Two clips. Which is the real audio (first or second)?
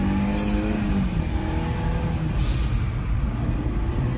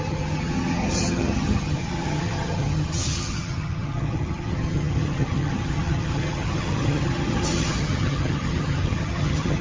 first